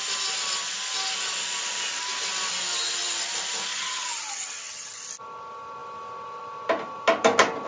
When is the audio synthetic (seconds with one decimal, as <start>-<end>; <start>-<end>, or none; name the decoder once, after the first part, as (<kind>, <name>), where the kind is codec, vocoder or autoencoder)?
3.7-5.0 (vocoder, HiFi-GAN)